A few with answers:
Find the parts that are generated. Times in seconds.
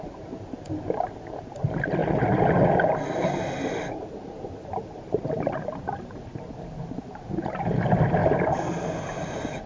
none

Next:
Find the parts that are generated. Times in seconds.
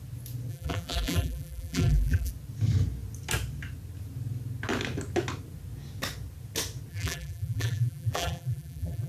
0.5-2.3 (vocoder, BigVGAN v2); 6.9-9.1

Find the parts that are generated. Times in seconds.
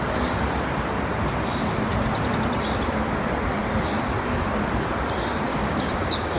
5.5-6.4 (codec, DAC)